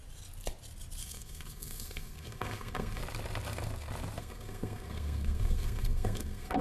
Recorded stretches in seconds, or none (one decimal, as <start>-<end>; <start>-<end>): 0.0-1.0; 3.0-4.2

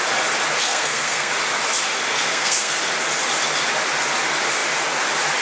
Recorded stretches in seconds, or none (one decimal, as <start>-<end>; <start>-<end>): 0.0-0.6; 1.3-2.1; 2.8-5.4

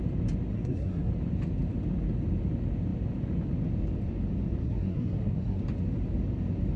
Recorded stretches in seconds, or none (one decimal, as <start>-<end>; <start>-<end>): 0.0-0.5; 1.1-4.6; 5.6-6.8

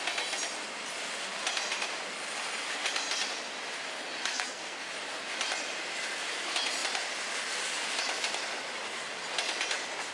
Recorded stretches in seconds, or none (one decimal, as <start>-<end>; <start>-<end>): 0.0-4.3; 4.9-10.1

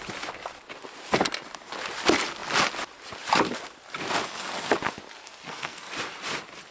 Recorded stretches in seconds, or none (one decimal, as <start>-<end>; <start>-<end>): 0.0-5.2; 5.9-6.7

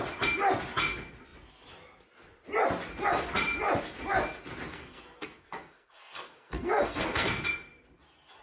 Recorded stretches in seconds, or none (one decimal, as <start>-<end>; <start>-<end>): 0.0-4.7; 7.4-8.4

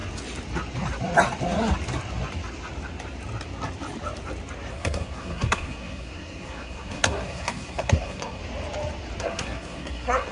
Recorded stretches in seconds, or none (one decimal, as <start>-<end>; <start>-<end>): 0.0-4.7; 8.4-9.2